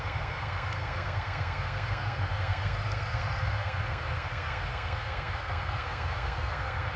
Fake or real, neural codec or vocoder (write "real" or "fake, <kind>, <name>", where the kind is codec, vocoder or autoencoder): fake, codec, SNAC